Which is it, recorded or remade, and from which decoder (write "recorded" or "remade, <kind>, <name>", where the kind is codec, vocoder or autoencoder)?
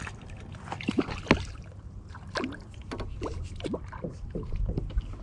remade, vocoder, BigVGAN v2